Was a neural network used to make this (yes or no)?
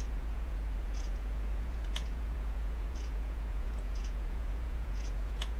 yes